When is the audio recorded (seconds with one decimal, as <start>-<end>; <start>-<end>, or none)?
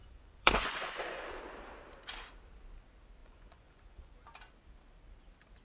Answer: 1.4-3.2; 4.1-5.6